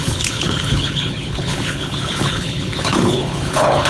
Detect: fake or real fake